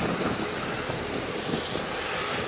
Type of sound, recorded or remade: recorded